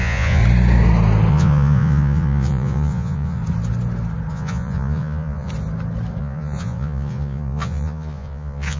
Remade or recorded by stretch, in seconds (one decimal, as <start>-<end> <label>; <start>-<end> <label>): 0.0-0.4 remade; 0.4-1.3 recorded; 1.3-3.4 remade; 3.4-4.3 recorded; 4.3-5.5 remade; 5.5-6.2 recorded; 6.2-8.8 remade